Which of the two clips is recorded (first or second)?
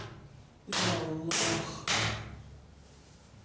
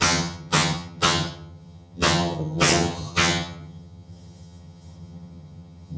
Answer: first